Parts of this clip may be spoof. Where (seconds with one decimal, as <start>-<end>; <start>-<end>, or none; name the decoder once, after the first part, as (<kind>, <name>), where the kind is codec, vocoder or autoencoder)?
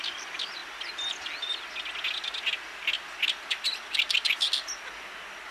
none